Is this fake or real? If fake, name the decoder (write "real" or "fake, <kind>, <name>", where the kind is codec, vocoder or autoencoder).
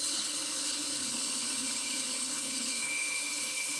fake, codec, HILCodec